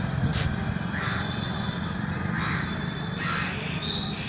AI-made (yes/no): no